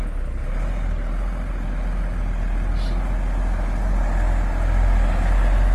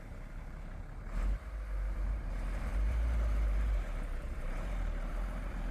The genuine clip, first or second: first